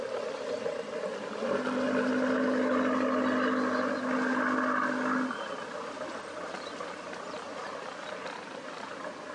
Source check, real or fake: real